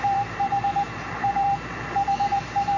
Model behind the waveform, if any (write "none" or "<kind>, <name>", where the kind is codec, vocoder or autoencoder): vocoder, BigVGAN v2